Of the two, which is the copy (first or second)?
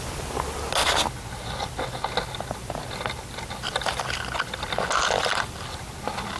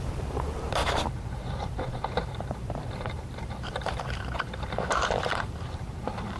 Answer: second